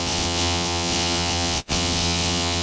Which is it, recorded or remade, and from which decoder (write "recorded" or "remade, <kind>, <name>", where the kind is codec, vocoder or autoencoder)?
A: remade, vocoder, WaveNeXt